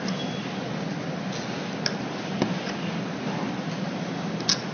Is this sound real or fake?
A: real